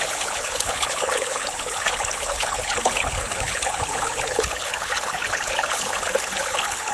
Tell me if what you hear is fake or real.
fake